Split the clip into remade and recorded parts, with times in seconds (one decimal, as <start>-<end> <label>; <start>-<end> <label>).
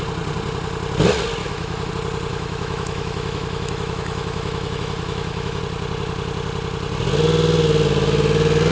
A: 0.0-1.4 recorded; 1.4-1.9 remade; 1.9-2.3 recorded; 2.3-5.6 remade; 5.6-8.7 recorded